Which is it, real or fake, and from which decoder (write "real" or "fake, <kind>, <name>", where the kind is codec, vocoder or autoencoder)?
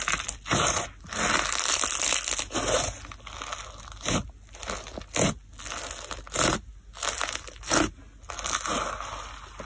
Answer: real